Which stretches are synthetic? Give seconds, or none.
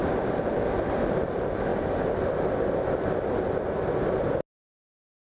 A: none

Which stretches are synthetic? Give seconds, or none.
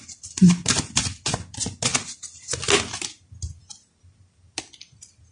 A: none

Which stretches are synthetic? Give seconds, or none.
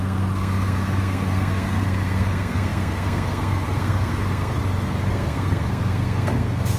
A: 0.0-4.6 (codec, SNAC); 5.1-6.8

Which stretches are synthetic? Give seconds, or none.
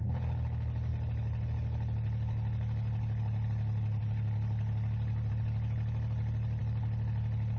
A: none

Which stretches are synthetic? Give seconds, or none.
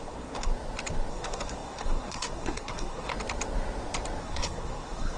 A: 0.0-0.5 (codec, SNAC); 1.1-3.1; 4.2-5.2